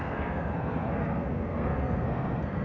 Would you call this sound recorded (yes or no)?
no